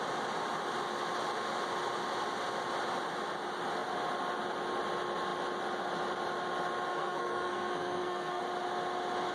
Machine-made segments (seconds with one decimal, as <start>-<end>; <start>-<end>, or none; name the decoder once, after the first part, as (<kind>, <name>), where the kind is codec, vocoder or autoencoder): 6.9-8.4 (codec, SNAC)